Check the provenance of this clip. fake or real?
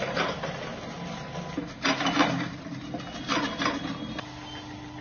real